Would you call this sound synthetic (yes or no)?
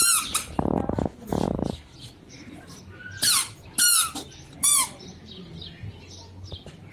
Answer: no